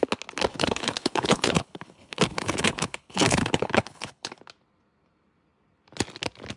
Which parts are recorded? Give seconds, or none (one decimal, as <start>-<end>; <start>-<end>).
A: 0.0-0.5; 4.4-6.6